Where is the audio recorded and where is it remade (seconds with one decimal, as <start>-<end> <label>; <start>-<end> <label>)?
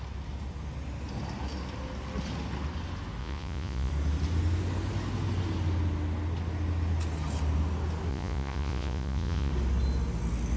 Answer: 0.0-3.2 recorded; 3.2-3.9 remade; 3.9-8.1 recorded; 8.1-9.5 remade; 9.5-10.6 recorded